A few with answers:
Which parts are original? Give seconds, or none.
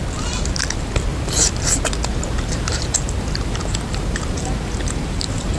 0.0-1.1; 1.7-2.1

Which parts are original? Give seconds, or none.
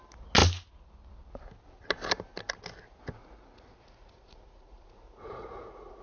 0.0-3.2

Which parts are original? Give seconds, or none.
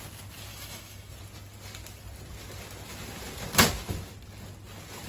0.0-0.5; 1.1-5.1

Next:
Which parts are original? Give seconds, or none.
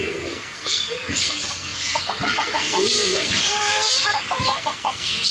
none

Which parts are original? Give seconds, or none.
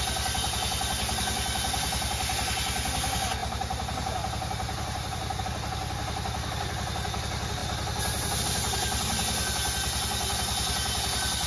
0.0-3.4; 5.4-11.5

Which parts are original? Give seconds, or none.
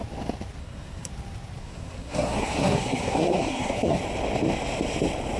0.0-0.6; 1.1-1.6; 4.0-5.4